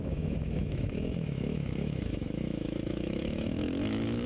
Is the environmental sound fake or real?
fake